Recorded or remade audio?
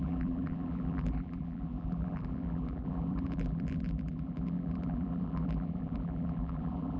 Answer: remade